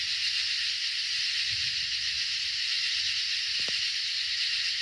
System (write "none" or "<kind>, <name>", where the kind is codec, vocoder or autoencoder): none